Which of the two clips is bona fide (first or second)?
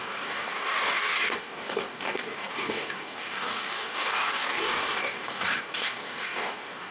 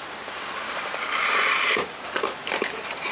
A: second